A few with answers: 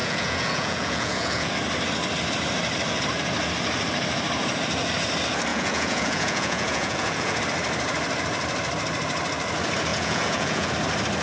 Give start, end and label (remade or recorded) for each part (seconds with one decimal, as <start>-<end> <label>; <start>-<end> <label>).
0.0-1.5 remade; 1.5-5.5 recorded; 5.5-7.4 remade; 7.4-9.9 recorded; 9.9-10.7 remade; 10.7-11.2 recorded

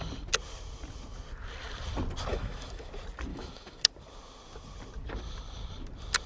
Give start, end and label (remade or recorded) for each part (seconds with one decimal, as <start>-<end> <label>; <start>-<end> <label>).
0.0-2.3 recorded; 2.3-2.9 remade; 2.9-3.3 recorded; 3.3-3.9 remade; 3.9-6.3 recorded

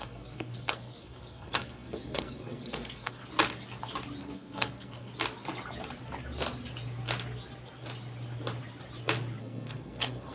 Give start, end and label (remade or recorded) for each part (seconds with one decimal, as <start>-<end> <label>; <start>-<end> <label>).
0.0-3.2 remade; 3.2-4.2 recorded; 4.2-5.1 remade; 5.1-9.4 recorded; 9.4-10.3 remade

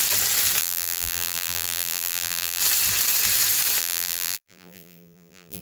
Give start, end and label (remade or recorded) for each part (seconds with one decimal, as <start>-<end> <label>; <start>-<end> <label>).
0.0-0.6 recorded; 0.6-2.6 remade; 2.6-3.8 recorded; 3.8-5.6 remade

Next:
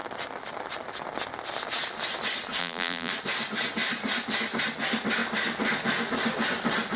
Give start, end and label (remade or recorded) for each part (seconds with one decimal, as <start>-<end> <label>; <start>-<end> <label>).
0.0-2.6 recorded; 2.6-3.1 remade; 3.1-7.0 recorded